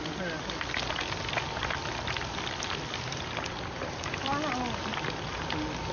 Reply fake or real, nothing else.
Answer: real